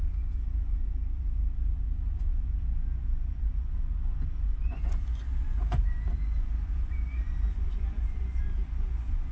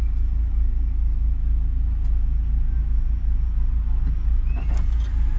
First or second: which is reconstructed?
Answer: first